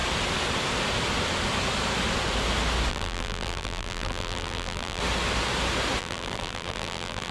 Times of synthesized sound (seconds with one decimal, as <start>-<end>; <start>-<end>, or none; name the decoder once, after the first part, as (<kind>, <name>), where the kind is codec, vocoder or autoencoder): 2.9-5.0 (vocoder, BigVGAN v2); 6.0-7.3